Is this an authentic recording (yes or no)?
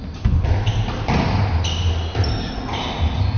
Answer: yes